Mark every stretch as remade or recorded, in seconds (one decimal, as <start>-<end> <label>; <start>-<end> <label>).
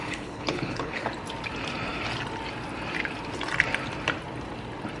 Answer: 0.0-1.1 remade; 1.1-5.0 recorded